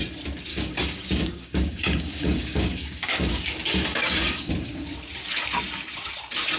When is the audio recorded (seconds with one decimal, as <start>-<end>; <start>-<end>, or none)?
0.0-0.5; 4.5-6.6